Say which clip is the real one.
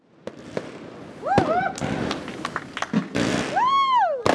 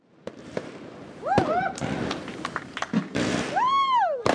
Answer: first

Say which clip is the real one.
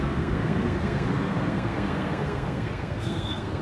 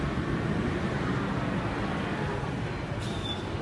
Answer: second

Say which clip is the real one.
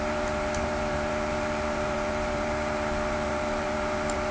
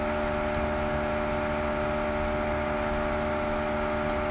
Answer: second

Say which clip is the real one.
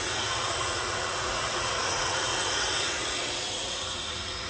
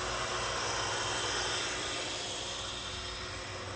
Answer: second